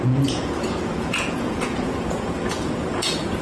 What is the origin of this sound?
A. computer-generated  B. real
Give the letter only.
A